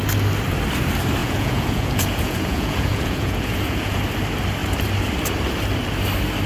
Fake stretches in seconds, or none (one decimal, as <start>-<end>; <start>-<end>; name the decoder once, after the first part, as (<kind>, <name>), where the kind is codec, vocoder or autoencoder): 1.2-4.0 (vocoder, Vocos)